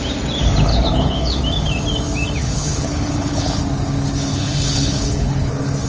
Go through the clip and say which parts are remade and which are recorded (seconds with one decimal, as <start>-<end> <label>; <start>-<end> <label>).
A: 0.0-0.7 recorded; 0.7-1.4 remade; 1.4-2.4 recorded; 2.4-3.6 remade; 3.6-4.3 recorded; 4.3-5.5 remade; 5.5-5.9 recorded

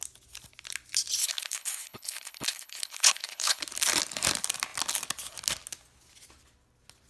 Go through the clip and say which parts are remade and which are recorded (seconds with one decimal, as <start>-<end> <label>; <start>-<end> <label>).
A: 0.0-1.2 recorded; 1.2-3.6 remade; 3.6-7.1 recorded

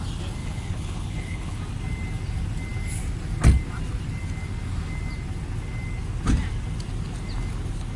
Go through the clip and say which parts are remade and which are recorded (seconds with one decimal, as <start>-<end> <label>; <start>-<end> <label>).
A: 0.0-0.4 recorded; 0.4-1.6 remade; 1.6-8.0 recorded